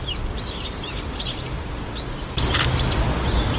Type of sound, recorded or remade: recorded